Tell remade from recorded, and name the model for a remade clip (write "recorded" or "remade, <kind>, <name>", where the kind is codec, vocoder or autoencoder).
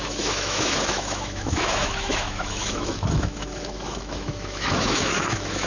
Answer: remade, autoencoder, DAC-VAE